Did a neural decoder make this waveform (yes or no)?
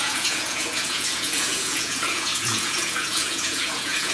yes